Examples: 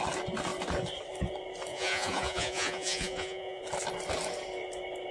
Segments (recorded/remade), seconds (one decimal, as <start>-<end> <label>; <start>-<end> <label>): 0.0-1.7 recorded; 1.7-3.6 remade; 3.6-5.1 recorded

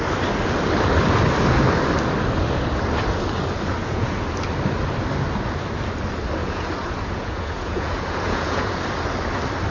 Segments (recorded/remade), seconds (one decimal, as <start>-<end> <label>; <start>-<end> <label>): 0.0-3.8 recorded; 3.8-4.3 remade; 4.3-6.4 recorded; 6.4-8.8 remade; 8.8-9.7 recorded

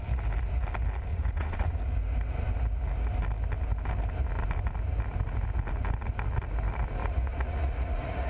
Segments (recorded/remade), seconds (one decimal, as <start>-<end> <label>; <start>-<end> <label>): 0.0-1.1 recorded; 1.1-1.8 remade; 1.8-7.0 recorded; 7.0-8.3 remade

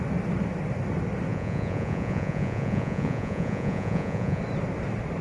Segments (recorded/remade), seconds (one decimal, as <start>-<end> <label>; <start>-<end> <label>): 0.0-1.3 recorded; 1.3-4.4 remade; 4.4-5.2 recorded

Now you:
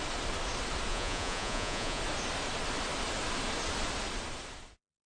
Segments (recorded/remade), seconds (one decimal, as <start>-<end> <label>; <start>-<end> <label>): 0.0-0.9 recorded; 0.9-2.0 remade; 2.0-5.1 recorded

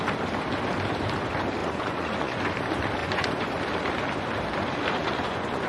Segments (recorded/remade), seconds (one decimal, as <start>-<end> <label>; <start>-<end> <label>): 0.0-1.6 recorded; 1.6-2.4 remade; 2.4-3.0 recorded; 3.0-3.5 remade; 3.5-5.0 recorded; 5.0-5.7 remade

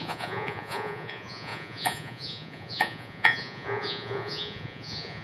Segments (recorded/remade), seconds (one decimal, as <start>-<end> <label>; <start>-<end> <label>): 0.0-5.2 remade